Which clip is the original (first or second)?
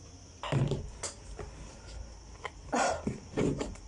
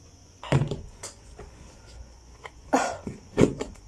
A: first